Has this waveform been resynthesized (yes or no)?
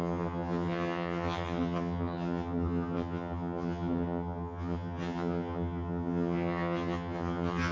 yes